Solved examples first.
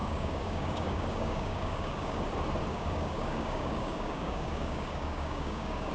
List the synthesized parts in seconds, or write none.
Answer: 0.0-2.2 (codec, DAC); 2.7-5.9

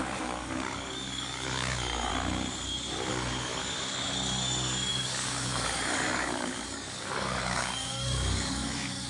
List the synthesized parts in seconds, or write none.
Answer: 0.0-2.1 (codec, DAC); 3.1-3.6; 4.9-9.1